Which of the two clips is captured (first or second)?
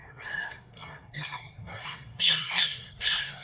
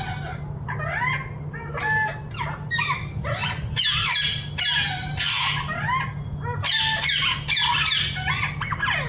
second